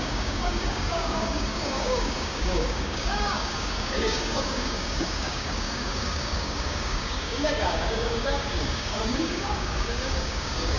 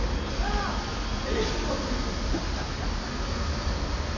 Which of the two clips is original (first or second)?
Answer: second